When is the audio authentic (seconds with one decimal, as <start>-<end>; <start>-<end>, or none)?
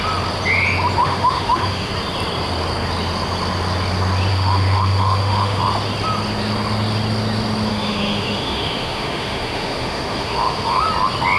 0.0-1.0; 1.9-4.3; 5.6-7.7; 10.9-11.4